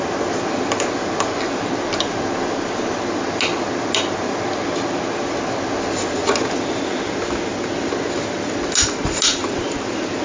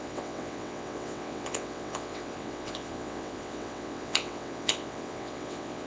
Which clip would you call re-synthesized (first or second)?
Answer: second